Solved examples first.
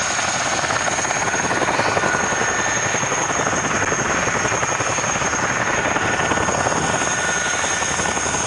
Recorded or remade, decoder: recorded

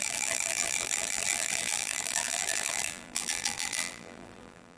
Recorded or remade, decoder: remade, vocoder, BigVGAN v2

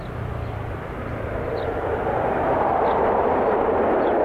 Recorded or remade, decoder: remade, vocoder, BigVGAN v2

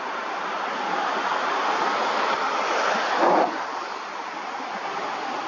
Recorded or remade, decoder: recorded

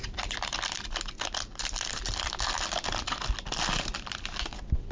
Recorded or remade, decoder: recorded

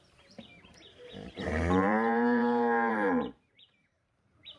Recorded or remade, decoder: remade, vocoder, BigVGAN v2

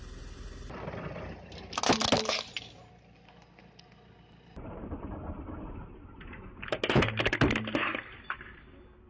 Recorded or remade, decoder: recorded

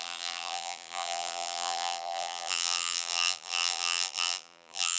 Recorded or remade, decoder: remade, vocoder, BigVGAN v2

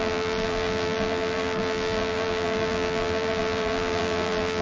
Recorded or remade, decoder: remade, vocoder, BigVGAN v2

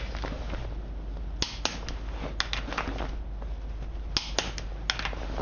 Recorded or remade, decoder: recorded